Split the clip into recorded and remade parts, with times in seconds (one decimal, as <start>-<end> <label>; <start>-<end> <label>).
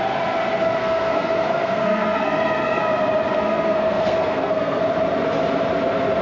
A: 0.0-0.8 recorded; 0.8-2.8 remade; 2.8-3.3 recorded; 3.3-4.8 remade; 4.8-6.2 recorded